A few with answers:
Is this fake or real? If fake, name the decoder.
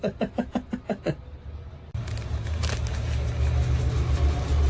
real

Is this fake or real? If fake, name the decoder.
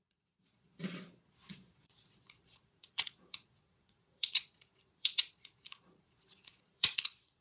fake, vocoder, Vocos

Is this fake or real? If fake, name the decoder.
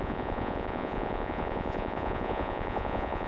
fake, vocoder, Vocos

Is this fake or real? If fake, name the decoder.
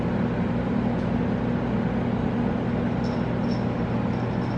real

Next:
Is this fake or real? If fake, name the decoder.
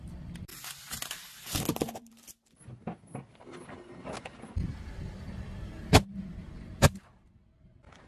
real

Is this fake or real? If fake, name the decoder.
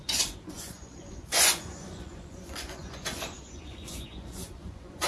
fake, vocoder, Vocos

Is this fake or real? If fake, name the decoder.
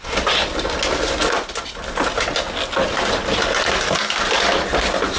real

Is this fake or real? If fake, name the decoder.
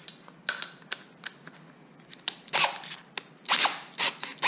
real